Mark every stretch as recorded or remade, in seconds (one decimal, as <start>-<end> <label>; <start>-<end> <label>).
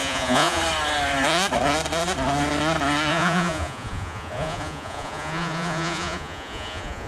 0.0-0.6 remade; 0.6-3.1 recorded; 3.1-7.1 remade